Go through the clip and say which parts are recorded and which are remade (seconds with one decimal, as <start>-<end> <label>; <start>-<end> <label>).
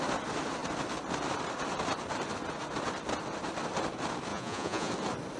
0.0-4.3 recorded; 4.3-4.9 remade; 4.9-5.4 recorded